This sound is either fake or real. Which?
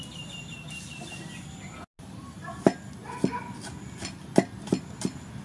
real